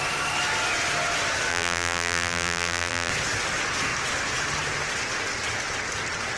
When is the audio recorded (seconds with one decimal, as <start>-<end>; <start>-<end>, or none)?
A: 0.0-1.5; 3.1-6.4